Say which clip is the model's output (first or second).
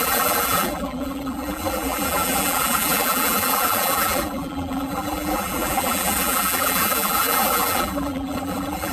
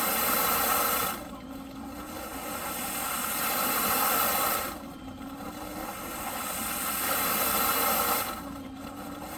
first